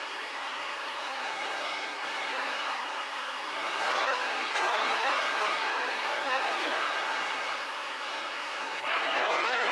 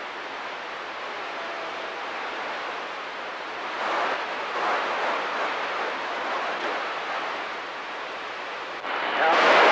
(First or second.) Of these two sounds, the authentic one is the second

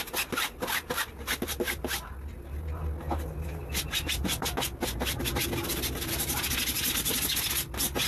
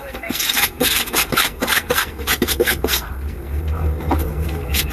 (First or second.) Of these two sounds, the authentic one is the first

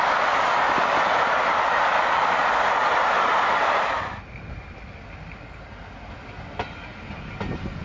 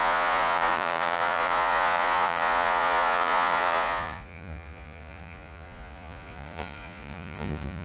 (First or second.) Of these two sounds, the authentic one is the first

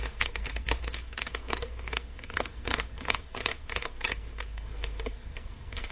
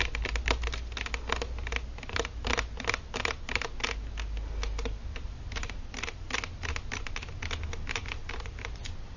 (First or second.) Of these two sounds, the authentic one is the second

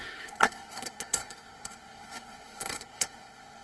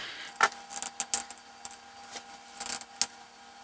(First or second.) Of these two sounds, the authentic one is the second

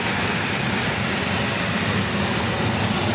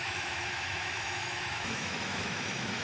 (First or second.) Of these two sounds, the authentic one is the first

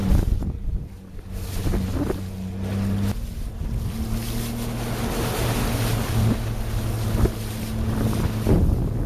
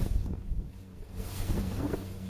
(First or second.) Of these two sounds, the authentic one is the first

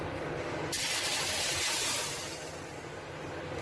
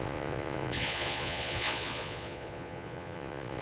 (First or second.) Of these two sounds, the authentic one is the first